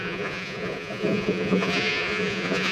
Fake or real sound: fake